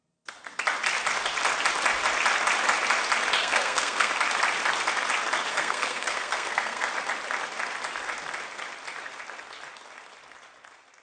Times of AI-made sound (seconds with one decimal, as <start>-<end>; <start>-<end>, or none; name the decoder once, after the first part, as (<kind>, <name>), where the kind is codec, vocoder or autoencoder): 3.4-4.1 (codec, SNAC); 5.5-6.9